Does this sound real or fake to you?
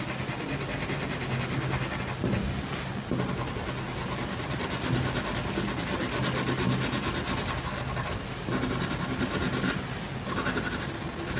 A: real